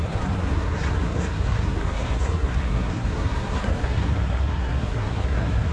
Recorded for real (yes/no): no